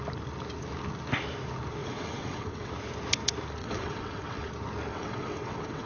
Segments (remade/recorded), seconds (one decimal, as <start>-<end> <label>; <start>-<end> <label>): 0.0-1.8 recorded; 1.8-2.7 remade; 2.7-3.6 recorded; 3.6-4.5 remade; 4.5-4.9 recorded; 4.9-5.9 remade